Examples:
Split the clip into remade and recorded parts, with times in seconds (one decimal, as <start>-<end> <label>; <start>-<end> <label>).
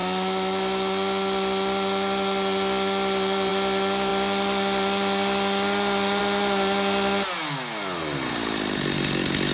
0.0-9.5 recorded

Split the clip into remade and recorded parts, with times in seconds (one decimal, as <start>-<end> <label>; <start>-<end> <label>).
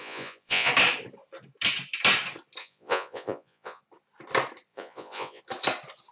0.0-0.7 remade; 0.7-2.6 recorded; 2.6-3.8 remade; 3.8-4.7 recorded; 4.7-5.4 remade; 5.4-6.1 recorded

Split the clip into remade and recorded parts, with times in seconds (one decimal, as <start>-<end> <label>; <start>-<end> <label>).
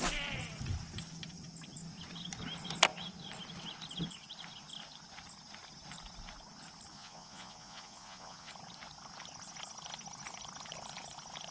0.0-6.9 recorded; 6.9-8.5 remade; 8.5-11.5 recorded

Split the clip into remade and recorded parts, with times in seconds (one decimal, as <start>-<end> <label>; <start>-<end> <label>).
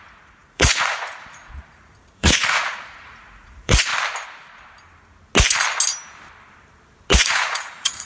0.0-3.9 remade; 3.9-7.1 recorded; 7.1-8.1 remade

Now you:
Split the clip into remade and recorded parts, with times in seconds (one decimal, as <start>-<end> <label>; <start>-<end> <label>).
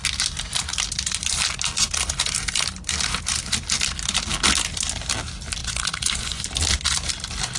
0.0-5.6 recorded; 5.6-6.4 remade; 6.4-7.6 recorded